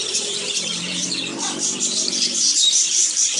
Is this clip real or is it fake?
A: fake